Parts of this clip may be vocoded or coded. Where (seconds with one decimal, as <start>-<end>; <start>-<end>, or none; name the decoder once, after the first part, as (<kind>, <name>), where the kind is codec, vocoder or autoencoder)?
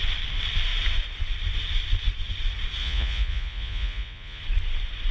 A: 2.8-4.4 (vocoder, Vocos)